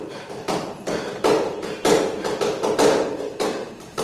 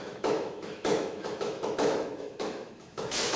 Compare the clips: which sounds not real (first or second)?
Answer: second